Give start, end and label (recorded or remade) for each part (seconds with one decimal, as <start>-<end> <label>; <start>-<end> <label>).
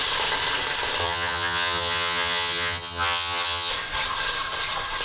0.0-1.0 recorded; 1.0-3.7 remade; 3.7-5.0 recorded